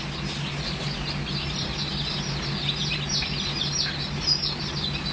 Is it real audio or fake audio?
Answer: real